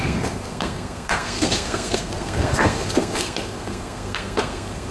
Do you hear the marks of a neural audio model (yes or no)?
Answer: yes